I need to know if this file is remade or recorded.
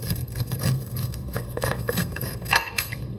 remade